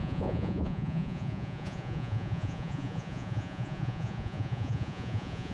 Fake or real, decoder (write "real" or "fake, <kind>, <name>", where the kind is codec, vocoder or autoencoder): fake, vocoder, Vocos